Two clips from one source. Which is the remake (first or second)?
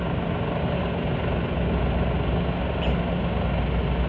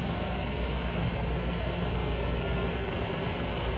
second